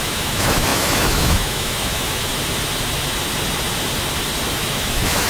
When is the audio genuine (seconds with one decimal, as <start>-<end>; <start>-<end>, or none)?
2.3-4.5